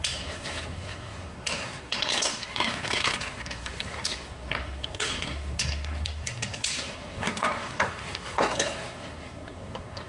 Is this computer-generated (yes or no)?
yes